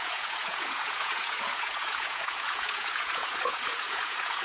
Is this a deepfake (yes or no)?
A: yes